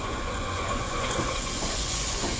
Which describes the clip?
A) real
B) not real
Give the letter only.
B